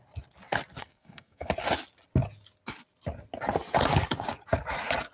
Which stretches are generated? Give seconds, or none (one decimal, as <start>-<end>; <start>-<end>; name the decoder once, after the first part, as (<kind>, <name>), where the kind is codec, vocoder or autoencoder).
0.8-1.5 (codec, SNAC)